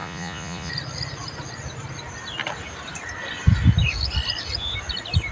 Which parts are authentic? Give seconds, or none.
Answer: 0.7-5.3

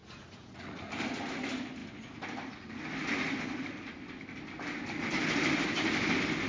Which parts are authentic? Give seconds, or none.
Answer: 0.9-6.5

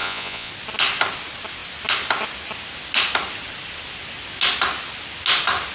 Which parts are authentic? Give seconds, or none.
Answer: 0.5-5.7

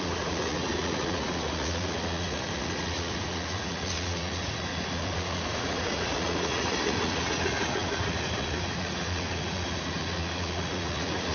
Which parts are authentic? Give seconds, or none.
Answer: none